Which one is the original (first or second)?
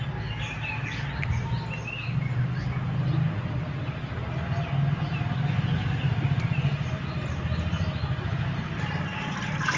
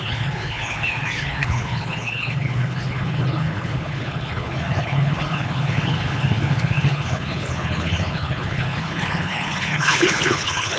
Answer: first